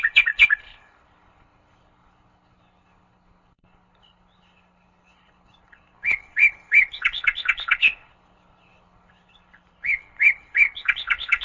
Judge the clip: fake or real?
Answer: fake